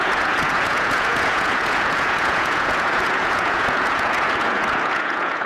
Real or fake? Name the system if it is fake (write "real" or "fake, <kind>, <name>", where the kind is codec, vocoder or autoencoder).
fake, vocoder, Vocos